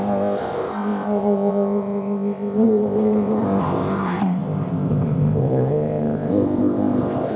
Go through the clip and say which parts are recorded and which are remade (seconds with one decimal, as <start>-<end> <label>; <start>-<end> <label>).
0.0-7.4 remade